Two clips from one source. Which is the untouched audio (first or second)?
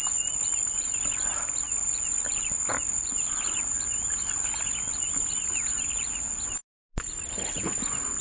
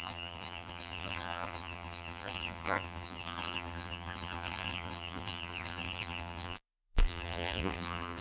first